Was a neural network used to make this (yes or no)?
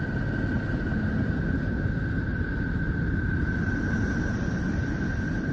no